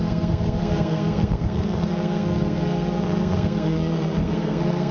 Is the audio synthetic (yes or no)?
yes